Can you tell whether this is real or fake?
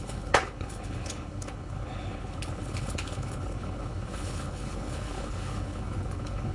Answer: fake